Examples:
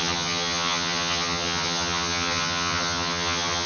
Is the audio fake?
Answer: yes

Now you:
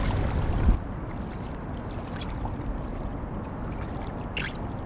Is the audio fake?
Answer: no